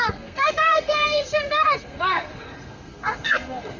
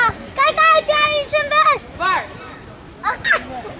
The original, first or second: second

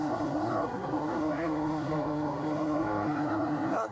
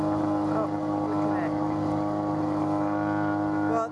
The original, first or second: second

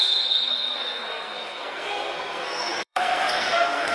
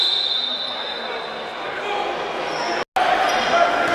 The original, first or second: second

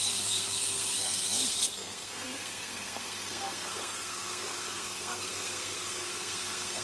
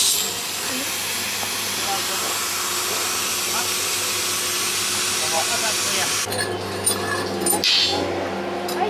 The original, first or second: second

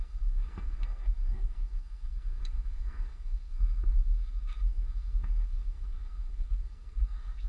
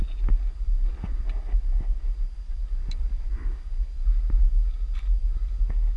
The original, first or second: second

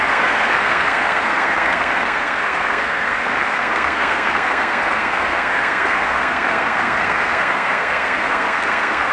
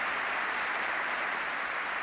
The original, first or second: second